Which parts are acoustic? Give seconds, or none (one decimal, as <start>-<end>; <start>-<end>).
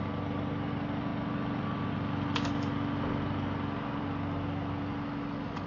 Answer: 0.0-5.7